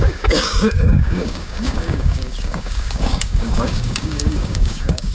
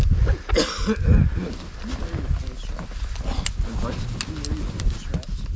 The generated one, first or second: first